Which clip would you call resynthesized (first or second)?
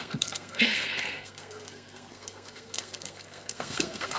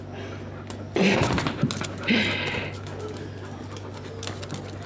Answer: first